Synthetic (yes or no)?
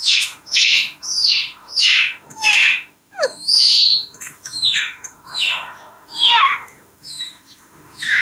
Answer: yes